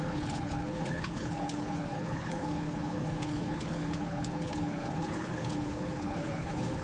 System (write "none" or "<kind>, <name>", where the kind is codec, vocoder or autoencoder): codec, HILCodec